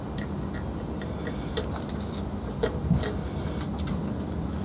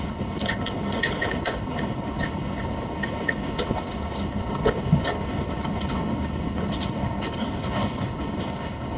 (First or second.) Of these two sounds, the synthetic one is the second